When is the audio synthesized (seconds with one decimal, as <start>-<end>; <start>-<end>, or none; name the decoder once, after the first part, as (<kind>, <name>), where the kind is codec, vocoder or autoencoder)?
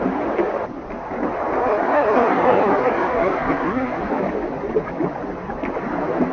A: 1.6-4.0 (codec, SNAC)